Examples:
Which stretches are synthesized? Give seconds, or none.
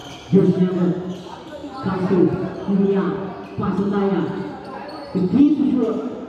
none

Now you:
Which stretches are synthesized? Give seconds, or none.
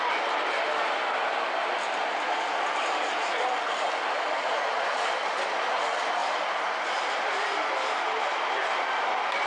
none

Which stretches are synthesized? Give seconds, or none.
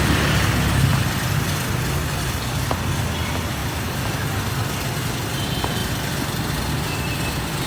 none